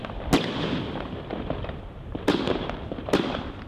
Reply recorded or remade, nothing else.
recorded